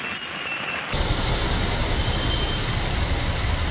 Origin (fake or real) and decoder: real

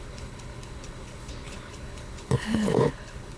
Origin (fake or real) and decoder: fake, codec, HILCodec